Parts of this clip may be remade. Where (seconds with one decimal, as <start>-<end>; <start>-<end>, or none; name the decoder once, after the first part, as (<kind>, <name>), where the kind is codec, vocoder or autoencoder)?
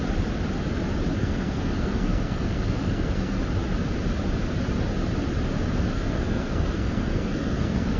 1.2-3.4 (codec, SNAC); 5.9-8.0